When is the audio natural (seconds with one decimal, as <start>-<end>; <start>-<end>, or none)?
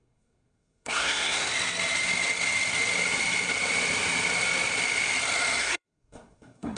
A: 1.5-5.6